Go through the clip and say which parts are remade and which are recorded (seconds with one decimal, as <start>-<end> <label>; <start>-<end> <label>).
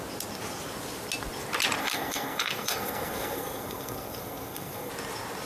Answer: 0.0-1.8 recorded; 1.8-4.9 remade; 4.9-5.5 recorded